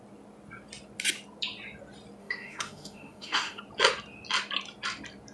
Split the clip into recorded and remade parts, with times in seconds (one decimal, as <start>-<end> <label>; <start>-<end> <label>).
0.0-2.2 recorded; 2.2-3.6 remade; 3.6-5.3 recorded